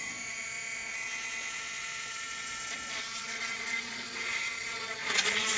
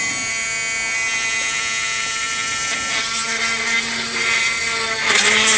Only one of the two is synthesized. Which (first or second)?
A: first